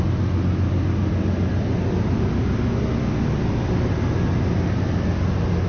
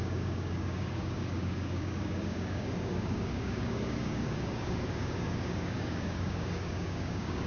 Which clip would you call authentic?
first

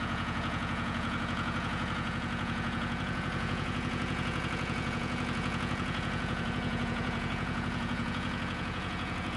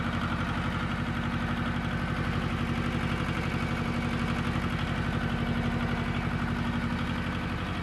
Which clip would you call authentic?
second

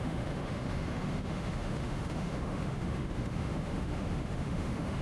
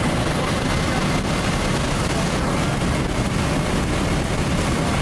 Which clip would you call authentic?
second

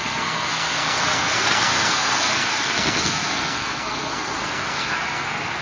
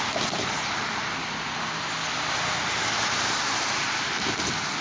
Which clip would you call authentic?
second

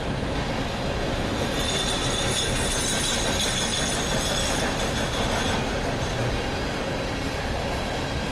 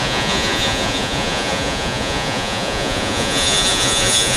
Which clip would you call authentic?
first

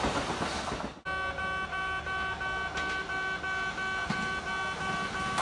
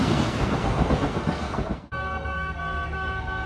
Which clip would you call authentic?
first